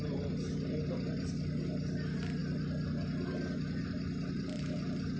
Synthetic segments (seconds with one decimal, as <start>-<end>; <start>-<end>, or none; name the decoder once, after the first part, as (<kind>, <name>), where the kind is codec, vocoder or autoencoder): none